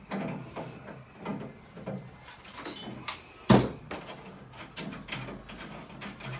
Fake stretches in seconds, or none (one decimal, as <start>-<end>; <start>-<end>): none